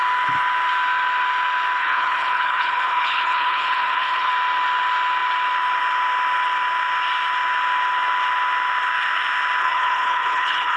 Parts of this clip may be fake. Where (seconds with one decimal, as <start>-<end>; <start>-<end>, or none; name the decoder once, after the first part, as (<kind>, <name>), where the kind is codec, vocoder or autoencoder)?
1.8-4.3 (codec, HILCodec); 9.6-10.8

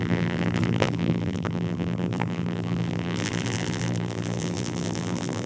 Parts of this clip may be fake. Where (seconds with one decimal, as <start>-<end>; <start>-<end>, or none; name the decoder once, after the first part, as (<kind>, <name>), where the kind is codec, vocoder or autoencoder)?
0.0-5.5 (vocoder, BigVGAN v2)

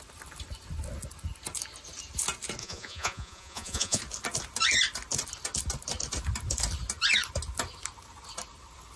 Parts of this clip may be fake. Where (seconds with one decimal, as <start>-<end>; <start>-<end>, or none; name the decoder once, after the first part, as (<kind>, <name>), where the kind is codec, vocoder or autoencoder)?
2.6-4.0 (vocoder, Vocos)

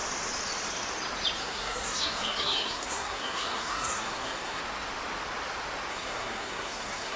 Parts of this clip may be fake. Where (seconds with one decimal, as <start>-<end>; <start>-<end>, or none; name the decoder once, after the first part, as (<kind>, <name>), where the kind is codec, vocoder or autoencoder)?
1.4-4.6 (codec, SNAC); 5.9-7.2

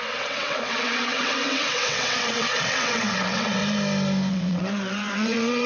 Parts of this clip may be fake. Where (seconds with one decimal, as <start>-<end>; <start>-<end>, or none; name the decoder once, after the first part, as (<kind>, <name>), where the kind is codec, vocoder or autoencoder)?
0.0-3.6 (vocoder, WaveNeXt); 4.3-5.7

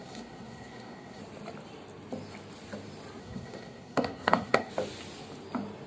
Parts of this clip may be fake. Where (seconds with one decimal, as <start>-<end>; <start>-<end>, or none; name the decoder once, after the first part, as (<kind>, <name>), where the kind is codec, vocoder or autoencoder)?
0.0-1.2 (codec, SNAC); 3.2-4.7

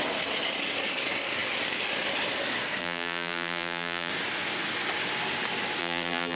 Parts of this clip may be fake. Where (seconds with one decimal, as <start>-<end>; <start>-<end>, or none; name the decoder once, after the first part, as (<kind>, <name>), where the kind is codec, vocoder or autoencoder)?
2.8-4.1 (vocoder, BigVGAN v2); 5.8-6.4